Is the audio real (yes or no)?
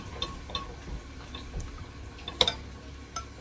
yes